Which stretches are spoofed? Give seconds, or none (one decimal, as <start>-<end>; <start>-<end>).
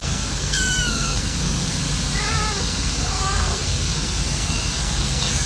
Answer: 0.0-1.8; 2.6-5.5